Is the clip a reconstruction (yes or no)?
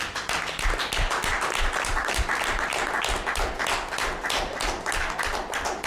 no